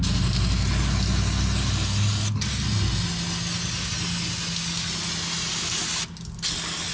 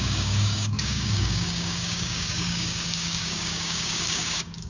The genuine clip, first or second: first